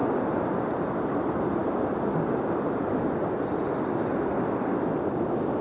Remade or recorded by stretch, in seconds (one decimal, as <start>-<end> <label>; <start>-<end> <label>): 0.0-5.6 recorded